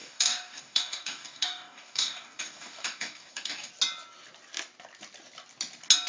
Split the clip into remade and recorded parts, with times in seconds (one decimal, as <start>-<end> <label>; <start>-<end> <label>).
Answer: 0.0-3.7 remade; 3.7-6.1 recorded